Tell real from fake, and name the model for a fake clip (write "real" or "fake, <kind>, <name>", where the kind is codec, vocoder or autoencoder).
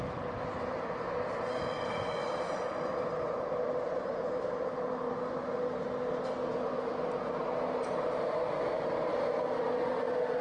real